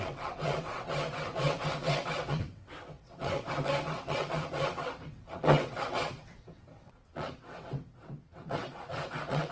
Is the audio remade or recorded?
remade